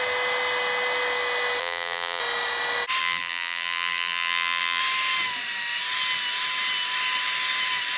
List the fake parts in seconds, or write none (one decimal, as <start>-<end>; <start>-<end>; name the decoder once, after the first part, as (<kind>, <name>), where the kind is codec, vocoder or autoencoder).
1.6-2.2 (vocoder, BigVGAN v2); 3.0-4.8